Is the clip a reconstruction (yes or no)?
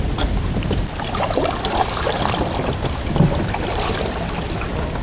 no